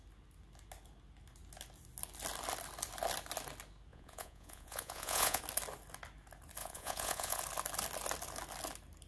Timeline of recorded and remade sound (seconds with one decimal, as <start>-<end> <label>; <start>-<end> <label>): 0.0-3.9 recorded; 3.9-5.4 remade; 5.4-6.6 recorded; 6.6-7.4 remade; 7.4-9.1 recorded

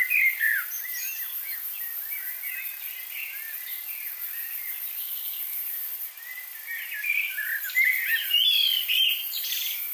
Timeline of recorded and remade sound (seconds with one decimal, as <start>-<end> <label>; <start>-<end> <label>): 0.0-1.7 remade; 1.7-5.6 recorded; 5.6-8.1 remade; 8.1-8.8 recorded; 8.8-9.9 remade